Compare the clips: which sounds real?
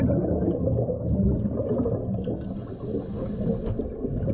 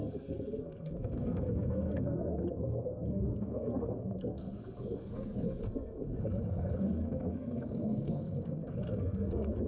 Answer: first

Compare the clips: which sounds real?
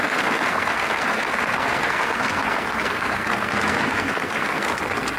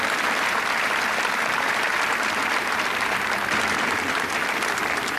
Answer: second